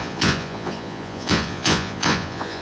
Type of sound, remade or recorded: remade